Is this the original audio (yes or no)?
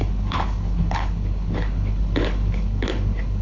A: no